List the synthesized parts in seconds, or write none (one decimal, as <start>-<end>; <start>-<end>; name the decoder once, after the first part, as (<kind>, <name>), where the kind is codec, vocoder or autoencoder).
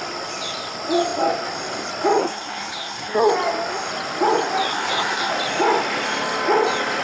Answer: 2.2-3.3 (codec, SNAC); 4.7-5.3